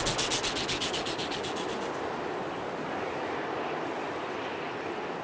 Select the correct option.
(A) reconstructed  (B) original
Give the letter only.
B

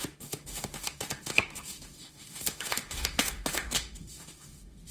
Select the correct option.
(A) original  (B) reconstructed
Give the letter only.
B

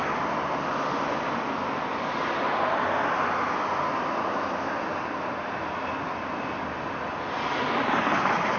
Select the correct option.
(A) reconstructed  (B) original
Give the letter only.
B